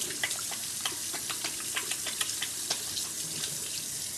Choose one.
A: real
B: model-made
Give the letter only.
A